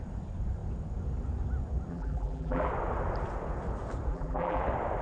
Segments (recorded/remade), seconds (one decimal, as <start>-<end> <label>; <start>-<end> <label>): 0.0-1.9 recorded; 1.9-2.7 remade; 2.7-4.1 recorded; 4.1-4.6 remade; 4.6-5.0 recorded